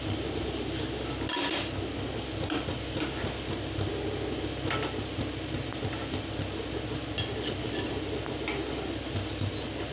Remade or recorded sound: recorded